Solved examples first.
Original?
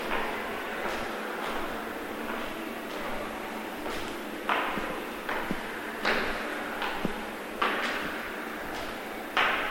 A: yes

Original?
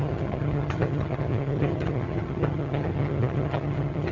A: no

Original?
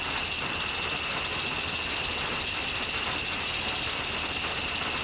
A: yes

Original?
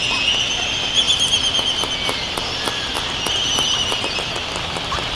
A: yes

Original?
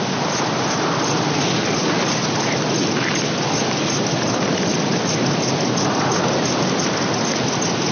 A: yes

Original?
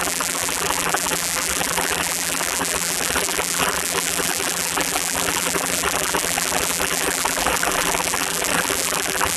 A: no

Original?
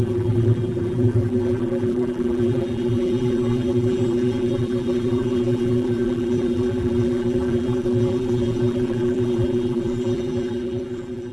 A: no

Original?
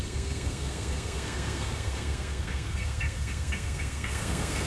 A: no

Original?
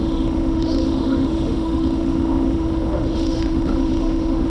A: no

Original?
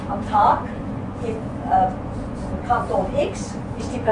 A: no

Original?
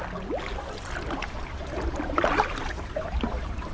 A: yes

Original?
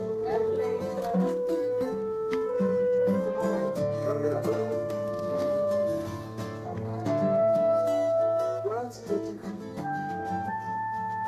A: no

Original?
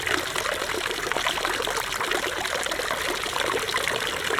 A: yes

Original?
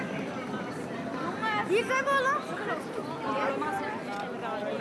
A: yes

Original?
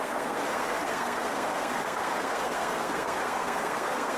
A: no